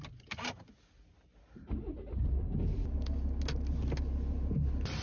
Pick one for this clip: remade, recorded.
recorded